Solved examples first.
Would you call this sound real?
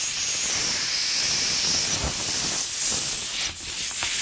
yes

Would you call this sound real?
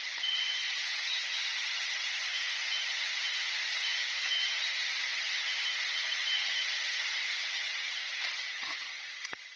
no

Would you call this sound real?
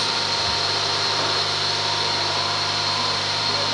no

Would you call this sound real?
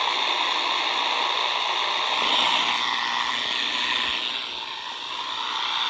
yes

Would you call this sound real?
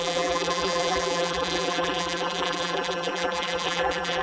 no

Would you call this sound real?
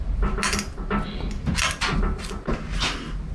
yes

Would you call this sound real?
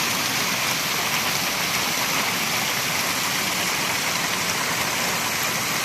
yes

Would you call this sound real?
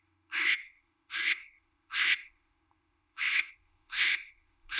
no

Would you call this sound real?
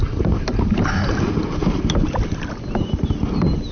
yes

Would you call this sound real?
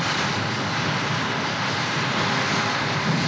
yes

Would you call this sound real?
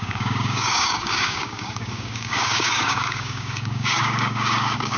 no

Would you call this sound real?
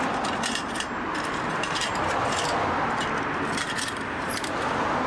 yes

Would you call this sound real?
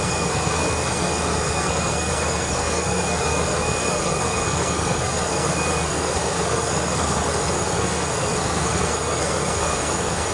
no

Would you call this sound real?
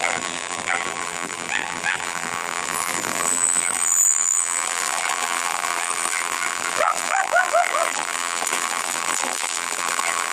no